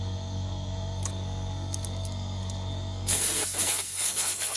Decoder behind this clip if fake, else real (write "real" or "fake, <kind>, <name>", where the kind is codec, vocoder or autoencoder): fake, codec, SNAC